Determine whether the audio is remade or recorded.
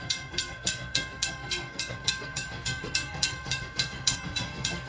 remade